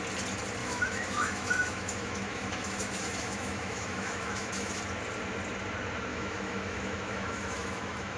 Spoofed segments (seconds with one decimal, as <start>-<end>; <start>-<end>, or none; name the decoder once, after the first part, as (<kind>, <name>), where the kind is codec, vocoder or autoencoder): 0.6-4.8 (autoencoder, DAC-VAE); 6.1-8.2